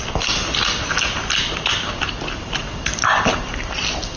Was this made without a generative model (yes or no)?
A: yes